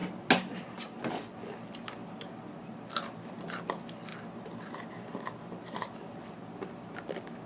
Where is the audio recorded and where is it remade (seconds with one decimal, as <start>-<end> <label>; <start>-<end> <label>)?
0.0-7.5 recorded